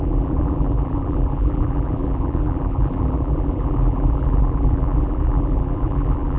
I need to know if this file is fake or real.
fake